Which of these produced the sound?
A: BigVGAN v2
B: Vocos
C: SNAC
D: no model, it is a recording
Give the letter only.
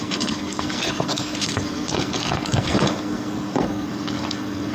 C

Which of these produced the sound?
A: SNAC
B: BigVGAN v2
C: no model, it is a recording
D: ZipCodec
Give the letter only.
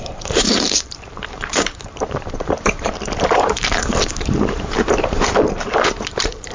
B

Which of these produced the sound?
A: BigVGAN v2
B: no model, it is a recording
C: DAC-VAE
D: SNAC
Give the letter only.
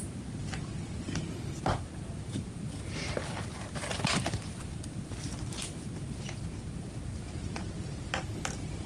B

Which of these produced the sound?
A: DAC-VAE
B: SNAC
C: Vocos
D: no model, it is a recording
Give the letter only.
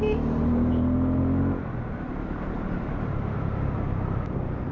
D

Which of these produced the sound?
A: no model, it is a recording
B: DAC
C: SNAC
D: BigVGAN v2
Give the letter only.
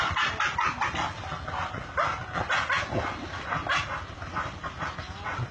A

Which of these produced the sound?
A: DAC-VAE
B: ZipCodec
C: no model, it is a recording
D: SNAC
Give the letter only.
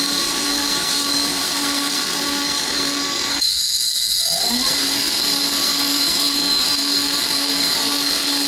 D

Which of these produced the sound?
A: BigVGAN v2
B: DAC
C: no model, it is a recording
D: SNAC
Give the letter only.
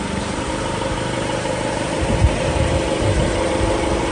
A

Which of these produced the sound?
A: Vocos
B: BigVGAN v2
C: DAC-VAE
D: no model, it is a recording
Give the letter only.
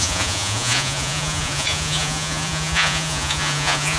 A